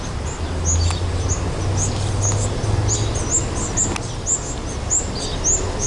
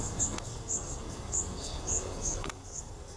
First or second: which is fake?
second